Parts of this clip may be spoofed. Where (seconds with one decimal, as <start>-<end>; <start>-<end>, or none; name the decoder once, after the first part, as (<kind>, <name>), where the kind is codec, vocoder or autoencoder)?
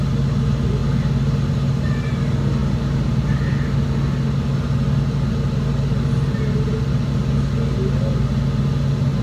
none